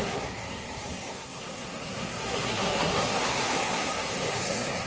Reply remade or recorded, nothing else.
remade